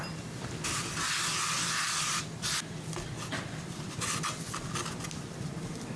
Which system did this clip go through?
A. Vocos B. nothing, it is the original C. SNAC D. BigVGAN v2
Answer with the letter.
B